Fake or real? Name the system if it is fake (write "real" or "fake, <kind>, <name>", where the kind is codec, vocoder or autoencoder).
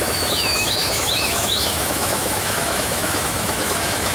fake, autoencoder, DAC-VAE